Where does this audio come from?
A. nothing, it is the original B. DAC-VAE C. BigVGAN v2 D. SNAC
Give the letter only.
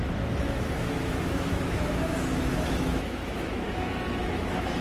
B